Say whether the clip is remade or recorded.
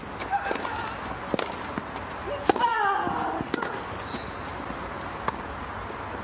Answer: recorded